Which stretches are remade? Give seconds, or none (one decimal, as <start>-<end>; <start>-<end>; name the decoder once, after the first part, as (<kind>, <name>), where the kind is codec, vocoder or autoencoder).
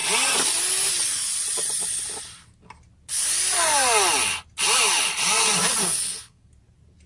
5.8-6.5 (codec, SNAC)